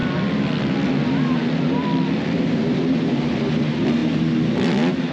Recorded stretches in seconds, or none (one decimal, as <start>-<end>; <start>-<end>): 0.0-5.1